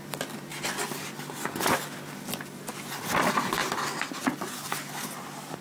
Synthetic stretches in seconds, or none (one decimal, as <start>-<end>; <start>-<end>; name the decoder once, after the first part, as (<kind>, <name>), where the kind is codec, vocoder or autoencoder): none